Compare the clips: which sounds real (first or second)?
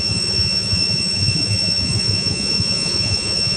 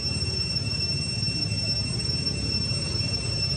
second